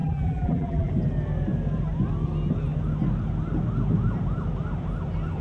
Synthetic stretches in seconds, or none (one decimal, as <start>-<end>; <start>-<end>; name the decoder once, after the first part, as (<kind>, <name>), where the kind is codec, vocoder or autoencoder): 0.0-0.9 (vocoder, BigVGAN v2)